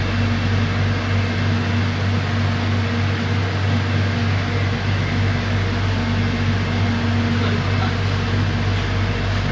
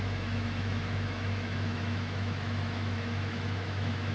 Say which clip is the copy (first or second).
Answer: second